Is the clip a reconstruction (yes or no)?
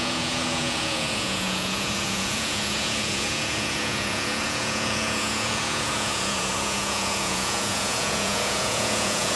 yes